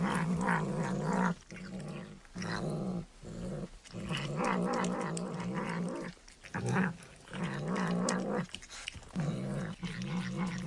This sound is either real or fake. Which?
real